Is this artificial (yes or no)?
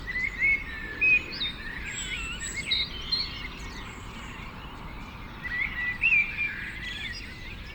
yes